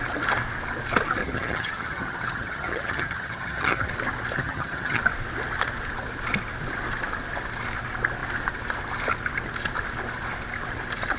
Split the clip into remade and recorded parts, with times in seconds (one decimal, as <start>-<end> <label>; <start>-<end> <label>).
0.0-1.2 recorded; 1.2-3.9 remade; 3.9-4.4 recorded; 4.4-5.0 remade; 5.0-11.2 recorded